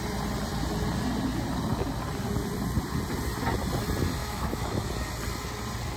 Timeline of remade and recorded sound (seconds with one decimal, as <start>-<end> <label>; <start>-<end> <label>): 0.0-4.2 recorded; 4.2-4.9 remade; 4.9-6.0 recorded